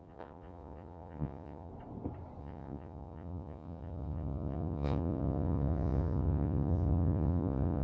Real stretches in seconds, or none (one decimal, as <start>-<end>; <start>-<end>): 1.7-2.4